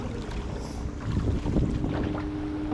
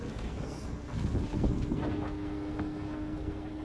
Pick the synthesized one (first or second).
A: second